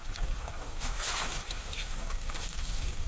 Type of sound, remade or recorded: remade